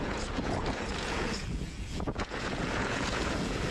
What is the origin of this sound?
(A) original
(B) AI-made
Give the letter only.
B